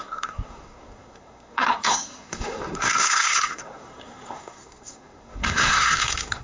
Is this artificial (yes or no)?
yes